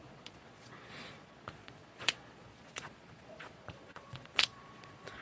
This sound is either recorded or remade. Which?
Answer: remade